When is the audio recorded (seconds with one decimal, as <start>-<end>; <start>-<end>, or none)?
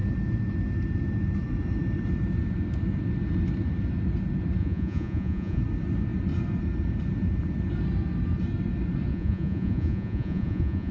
0.0-4.6; 5.6-9.1